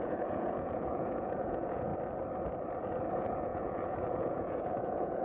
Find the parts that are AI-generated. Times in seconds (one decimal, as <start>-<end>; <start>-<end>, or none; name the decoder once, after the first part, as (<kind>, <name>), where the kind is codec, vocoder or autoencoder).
0.0-1.9 (vocoder, Vocos); 3.1-5.2